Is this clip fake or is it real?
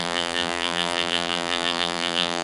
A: fake